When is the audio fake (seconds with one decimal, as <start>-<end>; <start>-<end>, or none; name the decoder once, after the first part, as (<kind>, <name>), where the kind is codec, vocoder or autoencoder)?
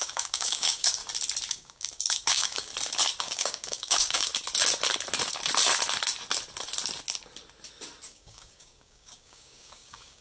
0.0-1.0 (codec, DAC); 1.5-2.7; 3.2-4.3; 8.1-10.2